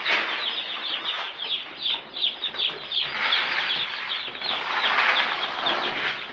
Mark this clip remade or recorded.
recorded